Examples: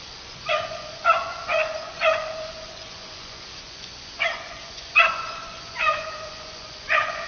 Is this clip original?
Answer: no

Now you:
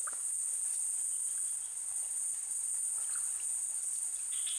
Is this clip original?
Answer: yes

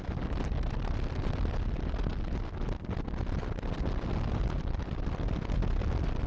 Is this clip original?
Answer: yes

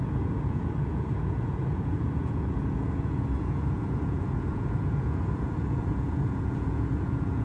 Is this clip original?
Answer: no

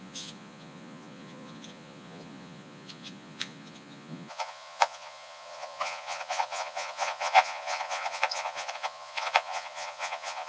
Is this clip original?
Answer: no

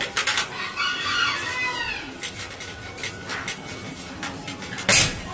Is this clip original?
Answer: yes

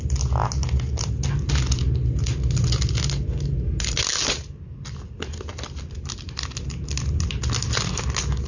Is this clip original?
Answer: yes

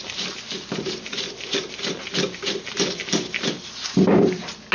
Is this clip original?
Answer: yes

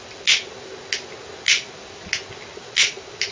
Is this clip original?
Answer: yes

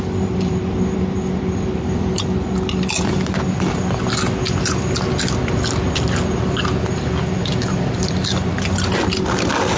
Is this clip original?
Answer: yes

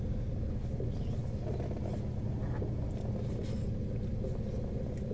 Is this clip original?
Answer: yes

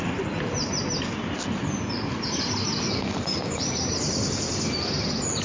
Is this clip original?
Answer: yes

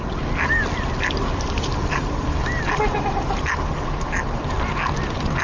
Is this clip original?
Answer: yes